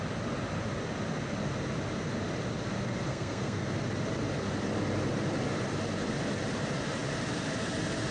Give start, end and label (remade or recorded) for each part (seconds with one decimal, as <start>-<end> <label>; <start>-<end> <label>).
0.0-3.1 recorded; 3.1-3.7 remade; 3.7-8.1 recorded